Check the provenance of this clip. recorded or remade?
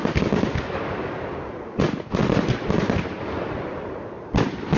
recorded